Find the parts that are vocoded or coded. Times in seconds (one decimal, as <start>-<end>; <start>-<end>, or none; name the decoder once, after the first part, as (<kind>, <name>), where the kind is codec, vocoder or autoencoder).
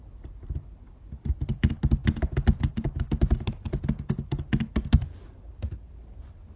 none